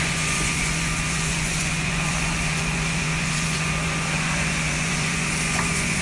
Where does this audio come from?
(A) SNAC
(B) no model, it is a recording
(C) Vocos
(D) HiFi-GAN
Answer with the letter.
C